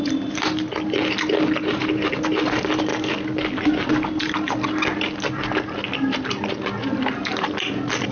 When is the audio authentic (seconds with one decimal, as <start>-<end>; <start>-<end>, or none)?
0.0-8.1